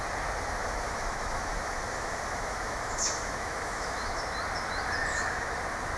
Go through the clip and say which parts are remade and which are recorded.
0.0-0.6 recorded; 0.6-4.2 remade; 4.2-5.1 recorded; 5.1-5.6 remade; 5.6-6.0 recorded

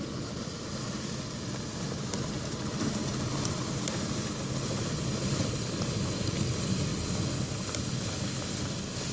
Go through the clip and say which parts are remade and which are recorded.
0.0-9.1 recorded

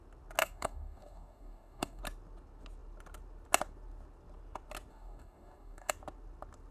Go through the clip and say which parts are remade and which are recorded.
0.0-0.4 recorded; 0.4-2.0 remade; 2.0-4.9 recorded; 4.9-5.9 remade; 5.9-6.7 recorded